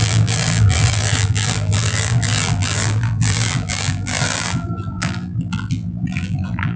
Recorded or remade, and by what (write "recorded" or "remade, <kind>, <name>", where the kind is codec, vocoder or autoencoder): remade, vocoder, BigVGAN v2